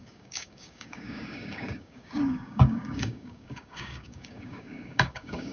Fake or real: fake